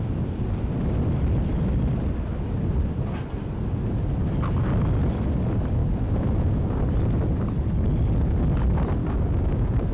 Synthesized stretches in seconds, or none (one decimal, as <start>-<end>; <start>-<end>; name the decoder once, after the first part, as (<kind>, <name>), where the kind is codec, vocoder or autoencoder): 5.8-6.8 (codec, DAC); 9.0-9.9